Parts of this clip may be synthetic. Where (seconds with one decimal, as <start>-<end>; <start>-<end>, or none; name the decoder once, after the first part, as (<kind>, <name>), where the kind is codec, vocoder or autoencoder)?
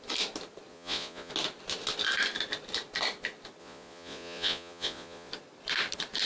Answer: 0.7-1.3 (vocoder, Vocos); 3.6-5.3